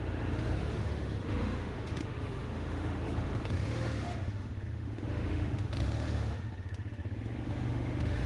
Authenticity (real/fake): fake